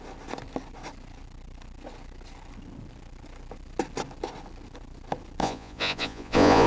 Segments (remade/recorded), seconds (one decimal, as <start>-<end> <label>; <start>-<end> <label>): 0.0-5.4 recorded; 5.4-6.7 remade